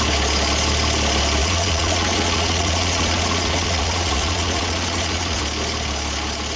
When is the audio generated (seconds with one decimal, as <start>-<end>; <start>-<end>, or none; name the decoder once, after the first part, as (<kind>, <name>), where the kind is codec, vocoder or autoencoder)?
1.4-5.4 (vocoder, Vocos)